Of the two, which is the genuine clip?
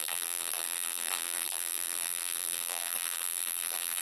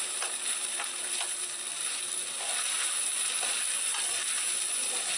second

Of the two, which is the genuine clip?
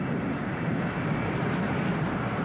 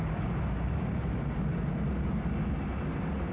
second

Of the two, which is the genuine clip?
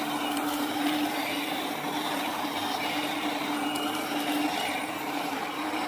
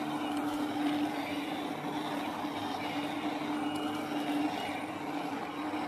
second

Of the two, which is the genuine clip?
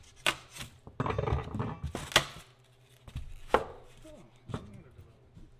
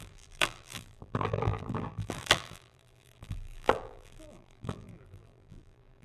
first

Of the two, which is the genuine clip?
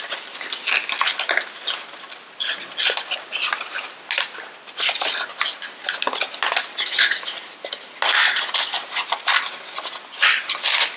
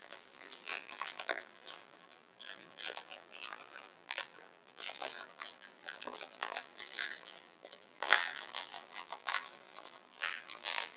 first